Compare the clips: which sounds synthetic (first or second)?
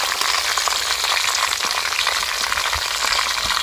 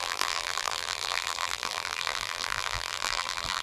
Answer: second